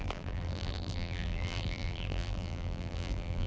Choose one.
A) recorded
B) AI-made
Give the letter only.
B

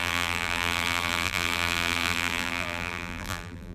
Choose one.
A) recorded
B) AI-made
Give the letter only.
B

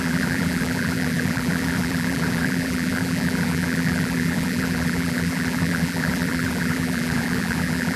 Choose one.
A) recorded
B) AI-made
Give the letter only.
B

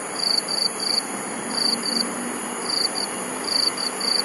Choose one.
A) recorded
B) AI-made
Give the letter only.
B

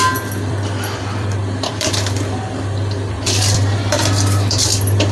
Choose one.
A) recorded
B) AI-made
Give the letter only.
B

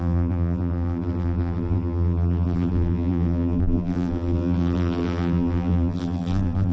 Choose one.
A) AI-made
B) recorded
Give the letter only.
A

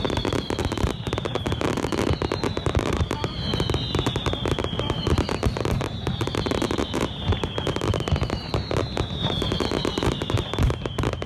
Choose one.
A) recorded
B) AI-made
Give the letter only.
B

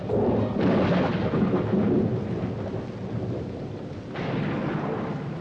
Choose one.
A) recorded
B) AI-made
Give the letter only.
A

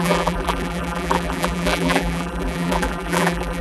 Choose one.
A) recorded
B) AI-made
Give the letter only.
B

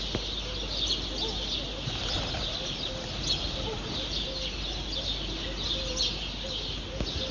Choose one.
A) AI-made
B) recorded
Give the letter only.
B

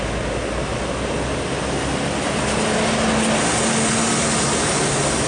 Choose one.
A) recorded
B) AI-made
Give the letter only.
A